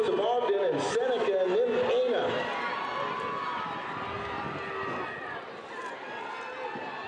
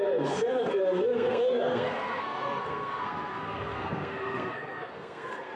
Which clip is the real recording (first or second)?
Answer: first